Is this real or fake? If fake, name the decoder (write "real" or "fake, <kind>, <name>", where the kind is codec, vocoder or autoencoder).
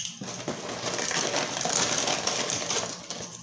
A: real